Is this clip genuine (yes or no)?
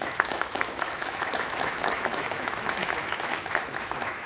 no